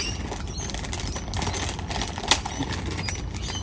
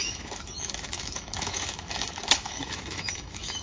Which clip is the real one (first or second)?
first